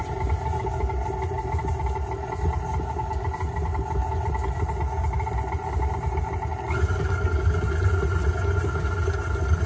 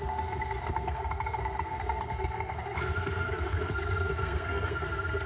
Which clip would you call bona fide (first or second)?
first